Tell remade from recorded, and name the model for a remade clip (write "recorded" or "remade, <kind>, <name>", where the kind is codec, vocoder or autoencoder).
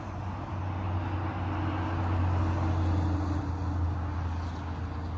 recorded